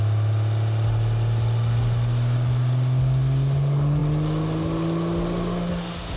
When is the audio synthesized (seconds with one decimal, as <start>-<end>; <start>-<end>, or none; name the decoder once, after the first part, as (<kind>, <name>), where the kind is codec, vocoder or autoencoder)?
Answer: none